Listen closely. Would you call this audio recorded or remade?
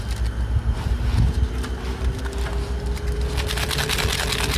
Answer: recorded